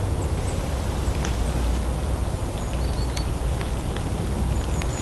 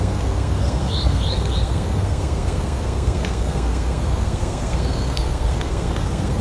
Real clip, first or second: first